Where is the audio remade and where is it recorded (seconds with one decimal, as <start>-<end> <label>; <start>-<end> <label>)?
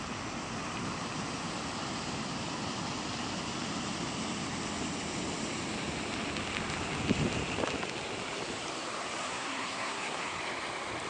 0.0-9.2 recorded; 9.2-10.4 remade; 10.4-11.1 recorded